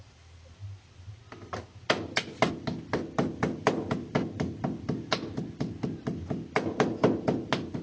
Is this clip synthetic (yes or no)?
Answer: no